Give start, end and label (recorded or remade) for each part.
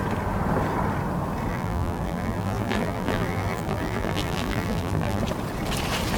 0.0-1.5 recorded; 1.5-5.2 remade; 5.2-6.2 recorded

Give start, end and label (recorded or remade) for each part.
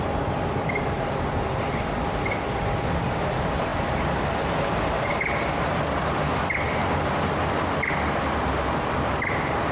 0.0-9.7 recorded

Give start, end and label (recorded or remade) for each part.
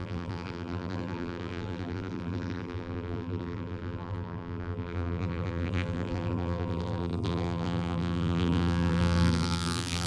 0.0-10.1 remade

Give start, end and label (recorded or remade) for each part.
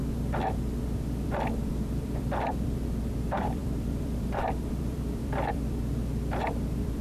0.0-0.8 recorded; 0.8-7.0 remade